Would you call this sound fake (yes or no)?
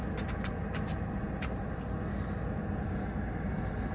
no